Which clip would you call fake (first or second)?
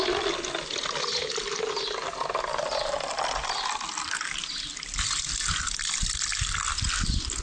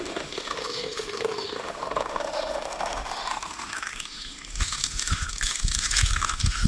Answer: second